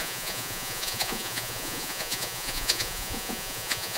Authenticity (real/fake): fake